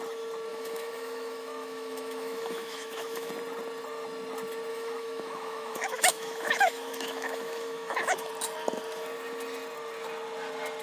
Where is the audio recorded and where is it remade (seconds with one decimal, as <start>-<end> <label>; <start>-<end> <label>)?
0.0-0.5 recorded; 0.5-3.3 remade; 3.3-4.7 recorded; 4.7-8.3 remade; 8.3-10.8 recorded